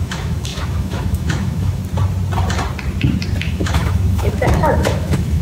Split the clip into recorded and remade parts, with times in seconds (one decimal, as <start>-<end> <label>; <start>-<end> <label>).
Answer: 0.0-1.8 remade; 1.8-3.4 recorded; 3.4-5.4 remade